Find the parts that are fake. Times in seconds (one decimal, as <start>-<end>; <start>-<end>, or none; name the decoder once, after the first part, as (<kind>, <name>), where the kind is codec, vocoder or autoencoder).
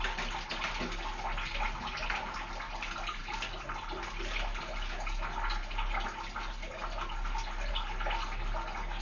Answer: none